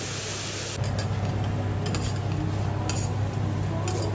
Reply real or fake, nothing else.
real